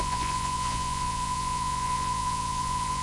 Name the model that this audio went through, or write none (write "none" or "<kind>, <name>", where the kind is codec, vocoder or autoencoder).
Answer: vocoder, Vocos